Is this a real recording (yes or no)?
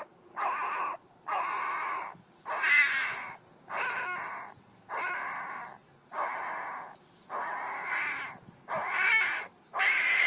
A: no